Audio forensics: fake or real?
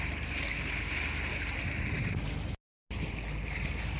real